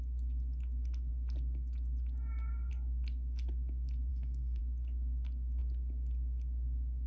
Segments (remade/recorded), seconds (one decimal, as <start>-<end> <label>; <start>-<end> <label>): 0.0-4.1 recorded; 4.1-4.6 remade; 4.6-7.1 recorded